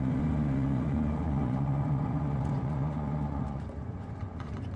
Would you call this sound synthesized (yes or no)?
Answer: yes